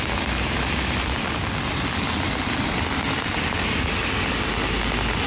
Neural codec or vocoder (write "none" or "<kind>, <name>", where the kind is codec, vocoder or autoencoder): none